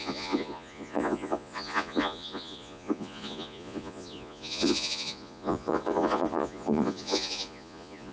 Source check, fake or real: fake